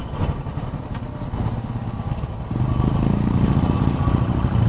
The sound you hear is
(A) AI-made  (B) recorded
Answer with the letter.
B